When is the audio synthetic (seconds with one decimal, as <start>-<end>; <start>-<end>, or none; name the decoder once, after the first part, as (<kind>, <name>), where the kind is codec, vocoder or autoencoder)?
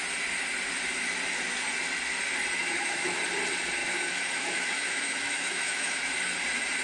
2.6-3.2 (autoencoder, DAC-VAE); 3.8-6.0